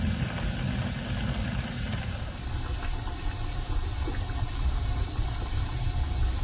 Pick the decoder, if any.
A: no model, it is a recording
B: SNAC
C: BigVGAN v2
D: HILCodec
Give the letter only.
A